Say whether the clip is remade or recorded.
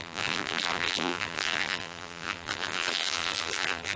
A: remade